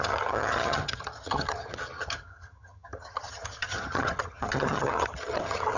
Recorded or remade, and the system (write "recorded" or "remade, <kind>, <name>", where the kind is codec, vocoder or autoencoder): remade, vocoder, HiFi-GAN